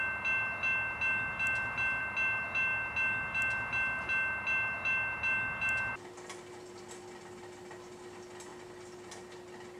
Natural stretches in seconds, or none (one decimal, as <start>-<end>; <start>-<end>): 0.0-9.8